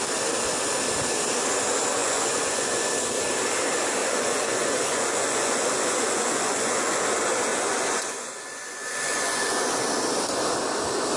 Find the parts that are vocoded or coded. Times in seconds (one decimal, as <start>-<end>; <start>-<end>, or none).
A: 2.0-2.9; 4.0-7.0; 7.5-9.7

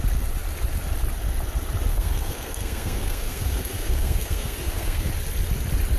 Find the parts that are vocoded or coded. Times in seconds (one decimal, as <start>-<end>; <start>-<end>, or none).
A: 1.9-5.1

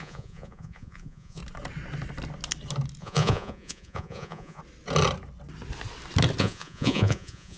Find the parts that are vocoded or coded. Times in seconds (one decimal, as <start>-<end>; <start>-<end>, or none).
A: 0.0-1.4; 3.0-4.6; 6.4-7.6

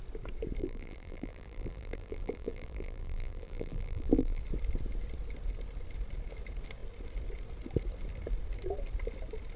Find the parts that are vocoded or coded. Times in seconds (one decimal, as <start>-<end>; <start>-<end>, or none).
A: 0.6-4.4